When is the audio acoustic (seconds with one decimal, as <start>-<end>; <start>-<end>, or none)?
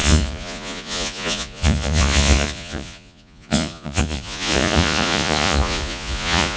none